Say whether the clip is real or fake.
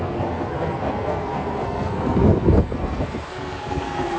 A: fake